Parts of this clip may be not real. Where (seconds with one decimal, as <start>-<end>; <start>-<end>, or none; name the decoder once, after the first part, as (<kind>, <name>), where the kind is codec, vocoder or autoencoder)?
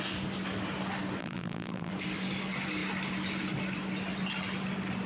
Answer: 1.2-1.9 (vocoder, BigVGAN v2)